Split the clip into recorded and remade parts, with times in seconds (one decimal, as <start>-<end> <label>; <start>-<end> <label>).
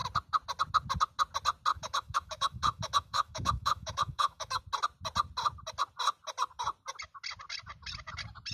0.0-1.7 recorded; 1.7-4.6 remade; 4.6-8.5 recorded